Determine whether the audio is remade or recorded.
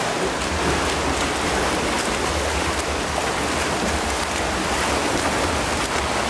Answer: recorded